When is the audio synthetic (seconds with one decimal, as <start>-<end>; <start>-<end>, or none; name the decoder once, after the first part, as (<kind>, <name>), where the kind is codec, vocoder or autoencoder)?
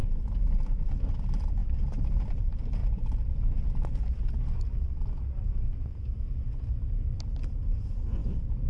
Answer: none